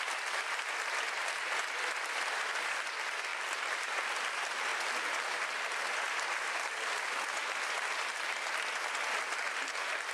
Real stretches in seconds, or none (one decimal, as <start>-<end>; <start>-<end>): 0.0-10.1